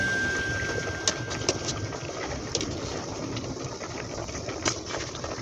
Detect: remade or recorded recorded